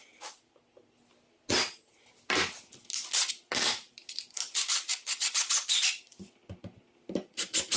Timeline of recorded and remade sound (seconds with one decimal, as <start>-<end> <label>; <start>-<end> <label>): 0.0-4.7 recorded; 4.7-5.9 remade; 5.9-7.8 recorded